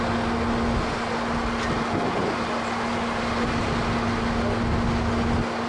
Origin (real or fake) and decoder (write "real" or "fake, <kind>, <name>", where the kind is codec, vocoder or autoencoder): real